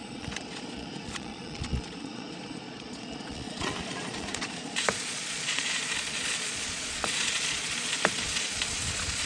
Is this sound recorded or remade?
remade